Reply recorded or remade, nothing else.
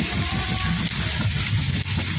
recorded